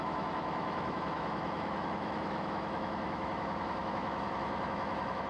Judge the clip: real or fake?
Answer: fake